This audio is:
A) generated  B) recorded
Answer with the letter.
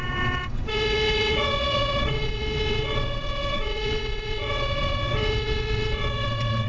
A